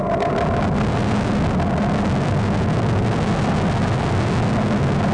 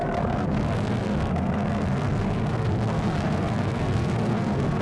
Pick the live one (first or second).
first